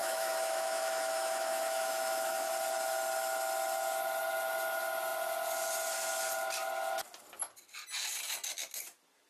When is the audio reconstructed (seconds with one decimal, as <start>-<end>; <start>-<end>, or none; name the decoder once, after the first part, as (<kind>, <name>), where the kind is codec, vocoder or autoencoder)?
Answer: 0.0-2.5 (autoencoder, DAC-VAE)